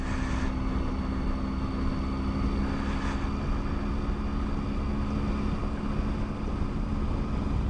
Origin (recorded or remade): recorded